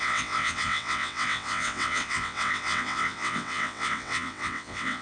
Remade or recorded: remade